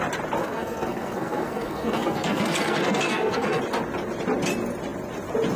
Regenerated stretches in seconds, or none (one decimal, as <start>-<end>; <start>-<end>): 0.4-3.6